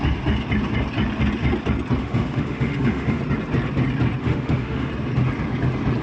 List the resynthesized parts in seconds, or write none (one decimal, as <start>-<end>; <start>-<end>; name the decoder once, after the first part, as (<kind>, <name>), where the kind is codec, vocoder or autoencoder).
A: 2.0-3.2 (autoencoder, DAC-VAE); 4.2-4.9